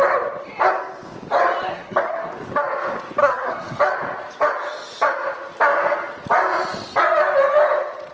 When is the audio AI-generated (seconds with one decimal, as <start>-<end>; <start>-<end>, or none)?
1.7-2.3; 3.2-3.8